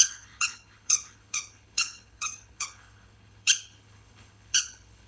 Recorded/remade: remade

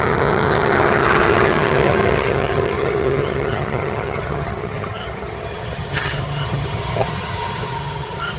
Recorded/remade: remade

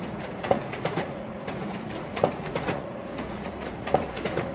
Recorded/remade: remade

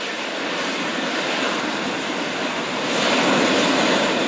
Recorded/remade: remade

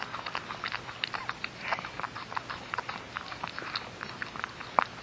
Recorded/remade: recorded